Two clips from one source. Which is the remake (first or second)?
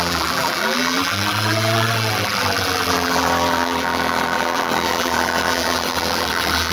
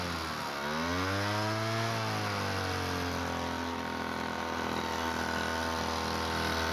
first